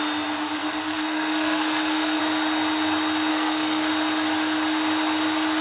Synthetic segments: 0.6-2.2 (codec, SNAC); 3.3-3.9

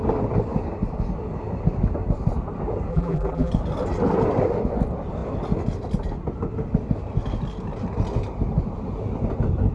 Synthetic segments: 2.9-3.5 (vocoder, BigVGAN v2)

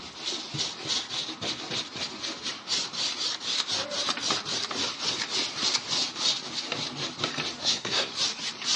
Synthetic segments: 7.6-8.1 (codec, SNAC)

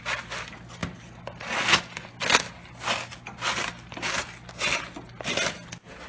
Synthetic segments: none

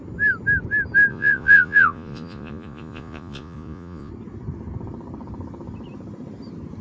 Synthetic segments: 1.1-4.1 (vocoder, Vocos)